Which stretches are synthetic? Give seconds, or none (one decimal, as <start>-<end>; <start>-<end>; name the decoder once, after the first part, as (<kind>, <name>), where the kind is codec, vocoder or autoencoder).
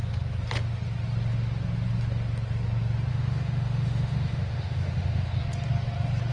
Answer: 3.1-5.3 (autoencoder, DAC-VAE)